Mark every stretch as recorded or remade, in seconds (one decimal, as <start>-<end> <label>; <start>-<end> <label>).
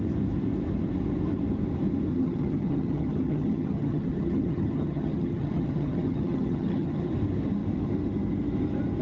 0.0-2.1 recorded; 2.1-7.1 remade; 7.1-9.0 recorded